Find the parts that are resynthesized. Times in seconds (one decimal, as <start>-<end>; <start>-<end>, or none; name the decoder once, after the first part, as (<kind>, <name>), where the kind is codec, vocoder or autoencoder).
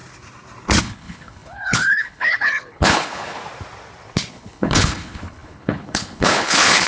0.8-3.4 (codec, HILCodec); 4.3-6.9